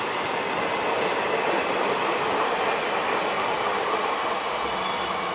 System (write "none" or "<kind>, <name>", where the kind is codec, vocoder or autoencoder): none